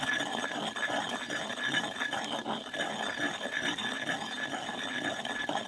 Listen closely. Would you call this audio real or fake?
real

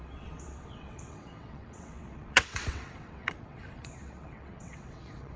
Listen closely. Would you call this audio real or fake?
fake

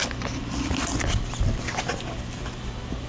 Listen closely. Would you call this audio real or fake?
real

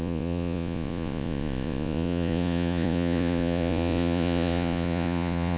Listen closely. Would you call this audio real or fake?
fake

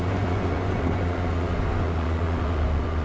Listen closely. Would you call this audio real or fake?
fake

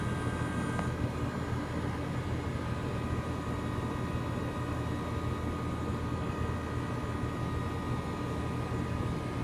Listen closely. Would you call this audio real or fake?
real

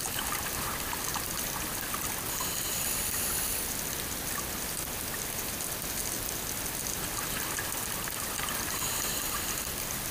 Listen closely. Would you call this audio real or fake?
real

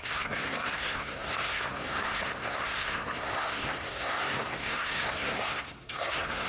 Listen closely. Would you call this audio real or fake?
fake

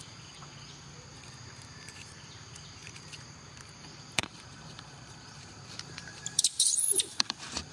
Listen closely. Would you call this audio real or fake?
fake